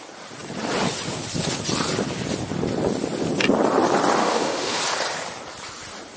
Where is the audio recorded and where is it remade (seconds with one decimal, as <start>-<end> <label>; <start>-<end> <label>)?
0.0-4.2 recorded; 4.2-4.8 remade; 4.8-6.2 recorded